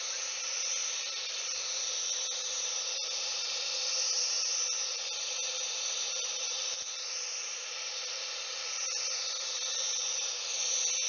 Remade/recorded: recorded